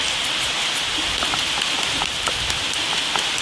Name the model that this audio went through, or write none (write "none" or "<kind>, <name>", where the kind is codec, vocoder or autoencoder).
none